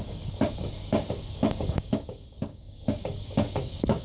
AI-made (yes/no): yes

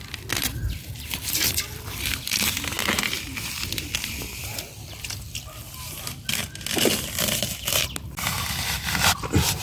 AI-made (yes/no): no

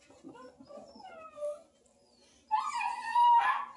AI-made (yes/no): no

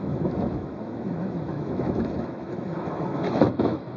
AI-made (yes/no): yes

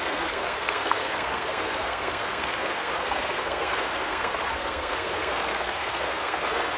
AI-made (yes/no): yes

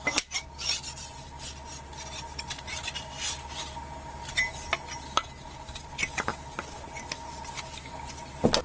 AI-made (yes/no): no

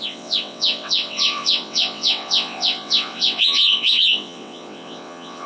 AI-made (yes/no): yes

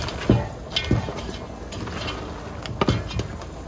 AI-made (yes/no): no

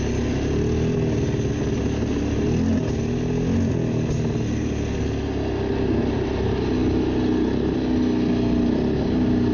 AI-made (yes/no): no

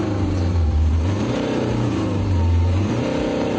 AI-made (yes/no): yes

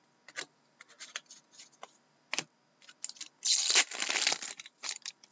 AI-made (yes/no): no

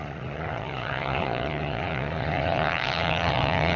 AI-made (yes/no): yes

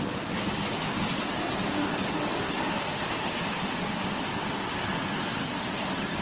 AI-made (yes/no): no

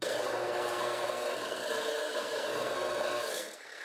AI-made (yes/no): yes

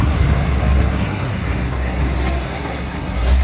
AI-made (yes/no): yes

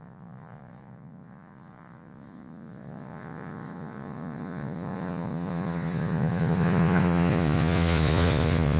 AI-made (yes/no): yes